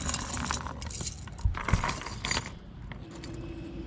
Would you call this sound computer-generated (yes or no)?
no